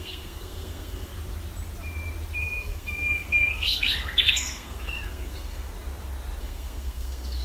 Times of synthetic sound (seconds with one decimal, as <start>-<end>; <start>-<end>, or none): 0.0-1.1; 2.4-5.7; 6.4-7.4